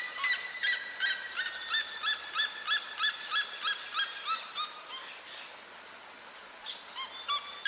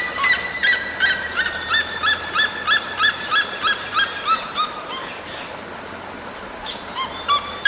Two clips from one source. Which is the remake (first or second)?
second